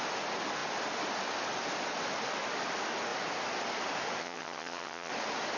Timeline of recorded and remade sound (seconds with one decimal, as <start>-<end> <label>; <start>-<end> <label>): 0.0-4.2 recorded; 4.2-5.1 remade; 5.1-5.6 recorded